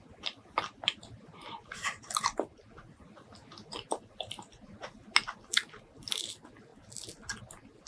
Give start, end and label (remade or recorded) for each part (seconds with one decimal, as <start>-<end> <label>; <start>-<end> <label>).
0.0-7.9 recorded